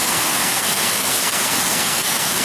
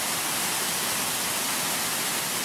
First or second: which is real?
second